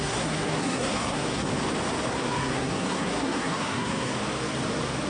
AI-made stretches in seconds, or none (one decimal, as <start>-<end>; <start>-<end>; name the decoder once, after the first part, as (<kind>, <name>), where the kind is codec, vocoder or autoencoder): 0.0-1.5 (codec, SNAC); 2.1-4.1